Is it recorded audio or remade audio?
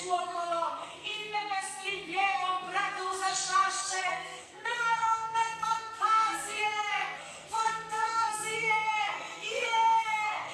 remade